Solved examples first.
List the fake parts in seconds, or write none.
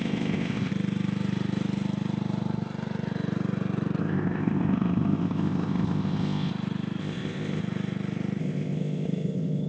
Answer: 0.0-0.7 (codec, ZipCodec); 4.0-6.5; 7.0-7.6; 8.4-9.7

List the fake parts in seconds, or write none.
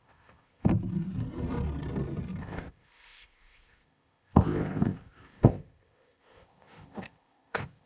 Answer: 0.0-0.7 (codec, ZipCodec); 2.4-7.9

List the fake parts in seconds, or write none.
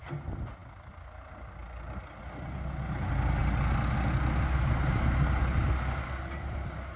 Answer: none